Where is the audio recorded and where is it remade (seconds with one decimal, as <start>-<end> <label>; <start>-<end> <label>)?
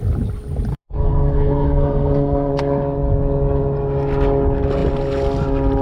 0.0-0.7 recorded; 0.7-2.5 remade; 2.5-5.8 recorded